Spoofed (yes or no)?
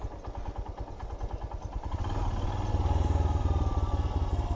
no